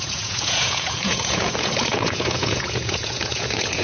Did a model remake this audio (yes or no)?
yes